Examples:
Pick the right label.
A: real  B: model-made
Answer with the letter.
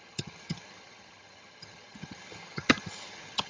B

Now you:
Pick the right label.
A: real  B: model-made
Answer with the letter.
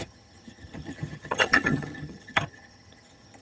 B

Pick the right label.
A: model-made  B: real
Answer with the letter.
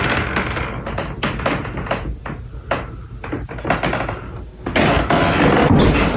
B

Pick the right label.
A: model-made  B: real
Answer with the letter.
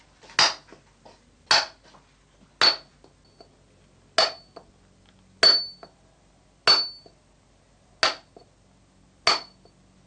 B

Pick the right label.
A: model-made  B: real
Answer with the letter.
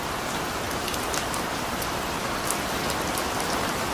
B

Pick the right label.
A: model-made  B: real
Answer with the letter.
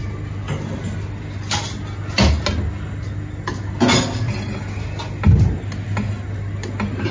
B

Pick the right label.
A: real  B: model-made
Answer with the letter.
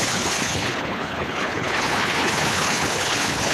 B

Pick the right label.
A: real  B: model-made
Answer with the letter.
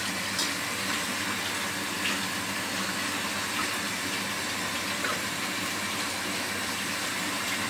A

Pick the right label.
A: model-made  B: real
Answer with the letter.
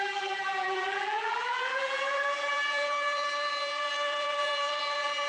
A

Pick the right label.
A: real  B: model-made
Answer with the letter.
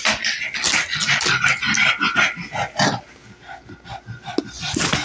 A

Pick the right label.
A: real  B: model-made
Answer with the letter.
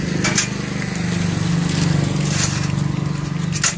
A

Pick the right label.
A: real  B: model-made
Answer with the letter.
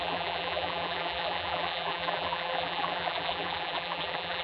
B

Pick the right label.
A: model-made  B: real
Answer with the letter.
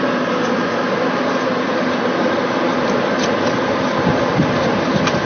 B